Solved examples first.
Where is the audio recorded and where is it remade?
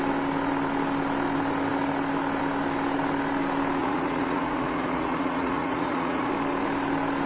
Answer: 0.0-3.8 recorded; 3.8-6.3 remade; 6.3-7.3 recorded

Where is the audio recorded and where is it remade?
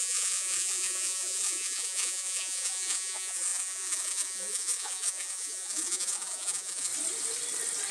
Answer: 0.0-6.9 remade; 6.9-7.9 recorded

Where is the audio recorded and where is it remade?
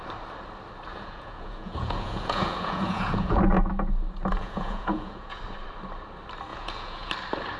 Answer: 0.0-0.9 recorded; 0.9-3.4 remade; 3.4-4.3 recorded; 4.3-5.4 remade; 5.4-6.5 recorded; 6.5-7.1 remade; 7.1-7.6 recorded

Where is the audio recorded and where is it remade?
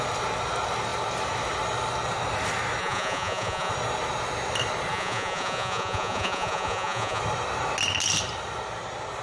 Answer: 0.0-2.8 recorded; 2.8-3.7 remade; 3.7-4.9 recorded; 4.9-7.2 remade; 7.2-9.2 recorded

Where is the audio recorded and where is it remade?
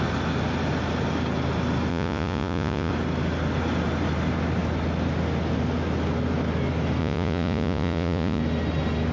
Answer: 0.0-1.9 recorded; 1.9-2.9 remade; 2.9-7.0 recorded; 7.0-8.4 remade; 8.4-9.1 recorded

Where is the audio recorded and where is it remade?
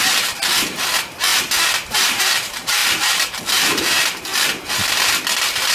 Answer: 0.0-5.7 recorded